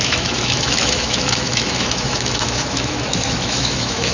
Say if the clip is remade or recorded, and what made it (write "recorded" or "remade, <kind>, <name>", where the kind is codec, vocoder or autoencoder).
remade, autoencoder, DAC-VAE